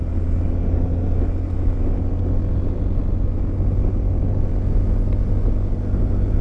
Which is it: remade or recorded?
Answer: recorded